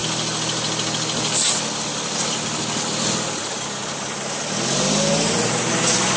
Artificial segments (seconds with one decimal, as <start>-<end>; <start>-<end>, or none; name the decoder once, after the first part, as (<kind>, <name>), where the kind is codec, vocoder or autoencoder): none

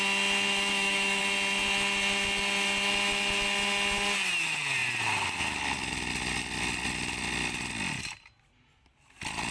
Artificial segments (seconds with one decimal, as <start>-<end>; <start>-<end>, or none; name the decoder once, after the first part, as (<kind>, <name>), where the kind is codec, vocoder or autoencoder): 0.5-1.2 (autoencoder, DAC-VAE)

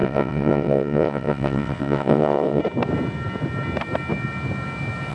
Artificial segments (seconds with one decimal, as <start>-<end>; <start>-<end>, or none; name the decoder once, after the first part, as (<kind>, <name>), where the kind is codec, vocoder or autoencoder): 0.0-2.6 (vocoder, WaveNeXt)

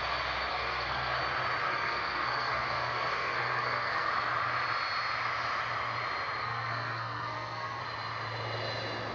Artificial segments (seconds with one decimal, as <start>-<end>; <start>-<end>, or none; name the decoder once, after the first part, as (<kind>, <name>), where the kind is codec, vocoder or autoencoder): 0.5-1.2 (codec, SNAC); 1.6-4.1; 6.4-7.8

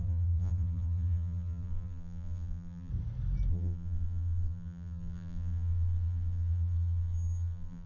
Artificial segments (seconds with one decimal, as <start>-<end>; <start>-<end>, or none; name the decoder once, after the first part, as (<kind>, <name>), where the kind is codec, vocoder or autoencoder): 0.0-2.9 (vocoder, BigVGAN v2); 3.5-7.9

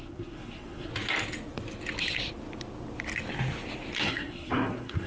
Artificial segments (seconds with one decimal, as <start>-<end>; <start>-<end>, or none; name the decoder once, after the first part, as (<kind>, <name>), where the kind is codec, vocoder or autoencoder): 0.0-0.9 (codec, SNAC); 4.0-5.1